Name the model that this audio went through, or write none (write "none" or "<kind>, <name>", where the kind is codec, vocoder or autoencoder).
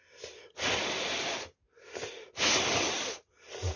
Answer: none